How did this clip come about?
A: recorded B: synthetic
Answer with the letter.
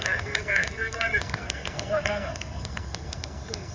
B